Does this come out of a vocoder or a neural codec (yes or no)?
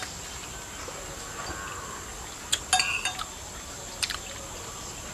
no